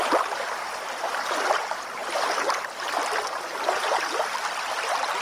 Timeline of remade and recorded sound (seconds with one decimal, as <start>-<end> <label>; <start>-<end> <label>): 0.0-5.2 recorded